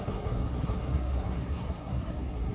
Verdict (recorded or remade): remade